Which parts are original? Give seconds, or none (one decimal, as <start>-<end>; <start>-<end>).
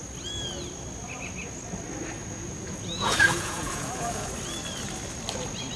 0.0-2.2; 4.3-5.8